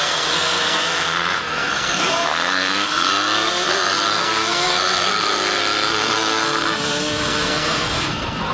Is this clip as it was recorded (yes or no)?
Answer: no